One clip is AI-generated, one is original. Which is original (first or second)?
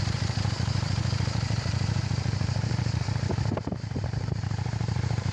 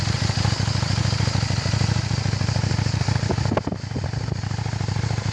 second